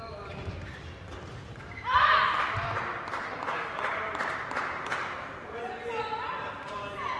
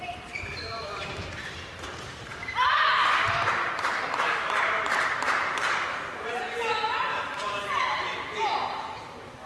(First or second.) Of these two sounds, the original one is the first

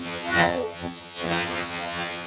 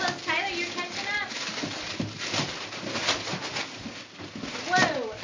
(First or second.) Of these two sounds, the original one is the second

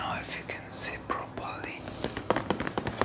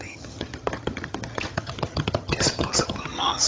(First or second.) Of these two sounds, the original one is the first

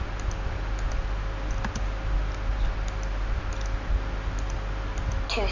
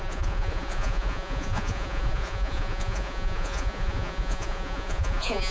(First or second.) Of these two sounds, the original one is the first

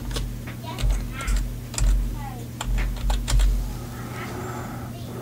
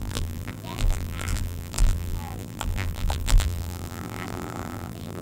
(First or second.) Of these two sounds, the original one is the first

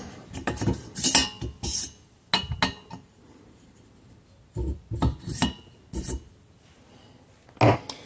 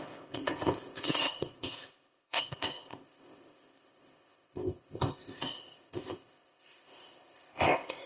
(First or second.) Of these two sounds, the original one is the first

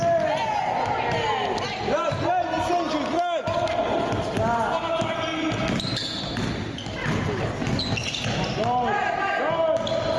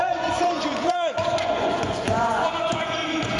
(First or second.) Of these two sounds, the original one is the first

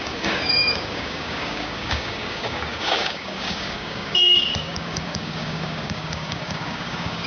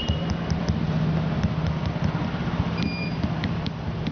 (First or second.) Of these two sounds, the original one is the second